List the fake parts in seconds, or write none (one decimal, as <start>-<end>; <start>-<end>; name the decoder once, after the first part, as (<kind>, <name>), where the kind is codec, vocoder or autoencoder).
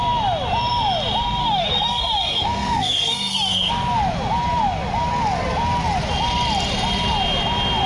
1.4-3.7 (codec, SNAC)